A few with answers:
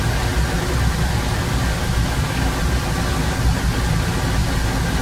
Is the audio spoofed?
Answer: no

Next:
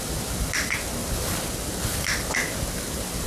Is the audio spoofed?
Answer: no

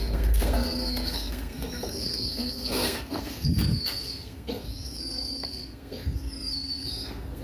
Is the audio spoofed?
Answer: yes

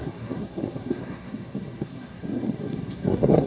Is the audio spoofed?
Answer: yes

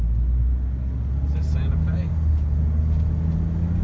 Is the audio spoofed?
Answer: no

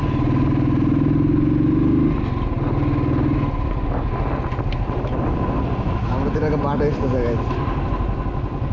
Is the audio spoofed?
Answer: no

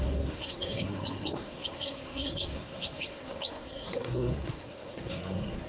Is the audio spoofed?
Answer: yes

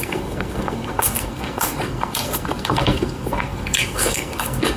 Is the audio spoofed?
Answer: yes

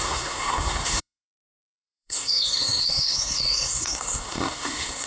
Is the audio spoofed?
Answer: yes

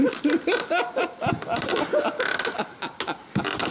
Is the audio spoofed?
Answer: no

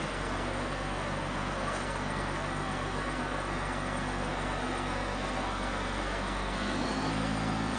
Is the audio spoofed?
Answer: yes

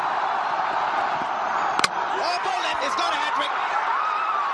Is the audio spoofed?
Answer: no